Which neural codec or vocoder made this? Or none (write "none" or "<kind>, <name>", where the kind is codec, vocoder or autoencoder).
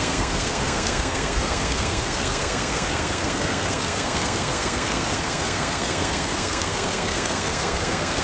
codec, SNAC